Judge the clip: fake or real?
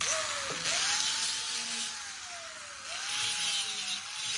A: real